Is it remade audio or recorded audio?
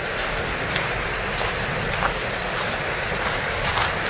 recorded